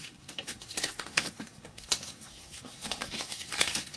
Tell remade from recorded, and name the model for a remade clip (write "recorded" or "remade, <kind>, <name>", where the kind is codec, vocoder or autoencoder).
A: remade, codec, SNAC